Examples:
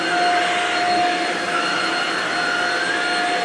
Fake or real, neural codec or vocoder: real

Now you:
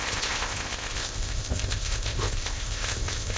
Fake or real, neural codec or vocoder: fake, codec, ZipCodec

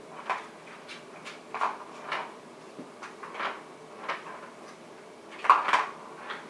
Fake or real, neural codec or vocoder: real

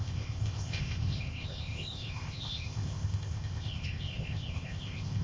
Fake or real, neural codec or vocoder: fake, codec, ZipCodec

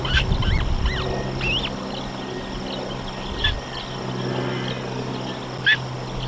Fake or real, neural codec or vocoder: real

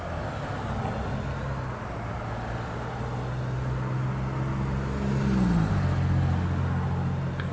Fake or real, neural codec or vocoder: real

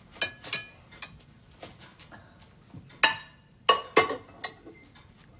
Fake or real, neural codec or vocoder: real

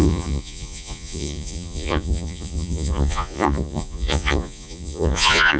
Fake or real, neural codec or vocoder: fake, vocoder, Vocos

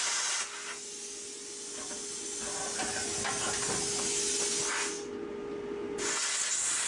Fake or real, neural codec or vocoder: real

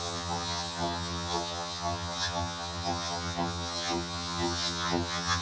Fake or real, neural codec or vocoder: fake, vocoder, HiFi-GAN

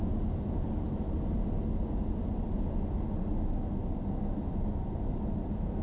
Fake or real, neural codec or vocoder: real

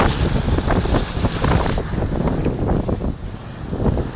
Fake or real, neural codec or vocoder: real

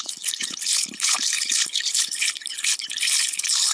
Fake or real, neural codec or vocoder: fake, codec, HILCodec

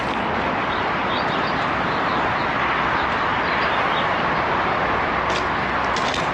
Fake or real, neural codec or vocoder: real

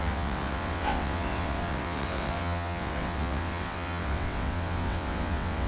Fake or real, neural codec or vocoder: fake, vocoder, WaveNeXt